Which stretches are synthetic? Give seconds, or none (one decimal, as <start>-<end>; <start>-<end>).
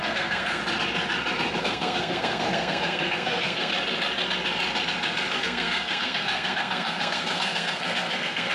0.0-0.6; 1.6-3.7; 5.3-8.5